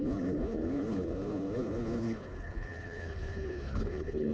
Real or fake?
fake